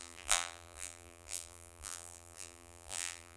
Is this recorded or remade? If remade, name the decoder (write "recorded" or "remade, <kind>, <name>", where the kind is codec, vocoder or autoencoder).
remade, vocoder, BigVGAN v2